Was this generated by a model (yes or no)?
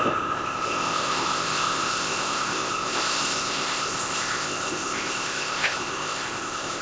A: yes